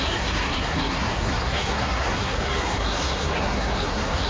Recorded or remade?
remade